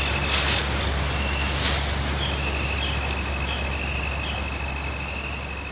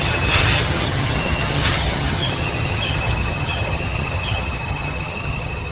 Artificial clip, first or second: second